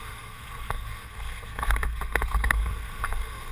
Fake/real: fake